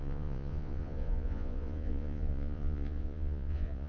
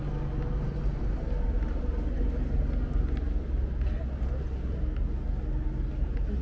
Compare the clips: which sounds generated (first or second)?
first